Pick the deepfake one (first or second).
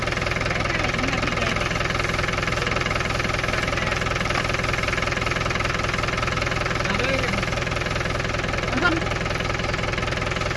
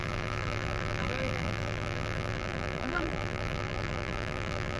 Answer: second